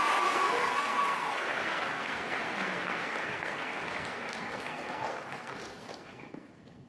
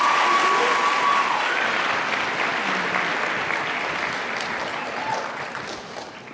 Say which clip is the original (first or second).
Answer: second